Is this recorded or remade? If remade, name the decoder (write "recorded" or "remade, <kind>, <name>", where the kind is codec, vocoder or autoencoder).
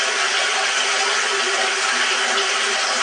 recorded